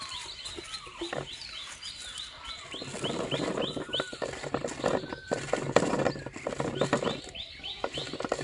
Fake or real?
real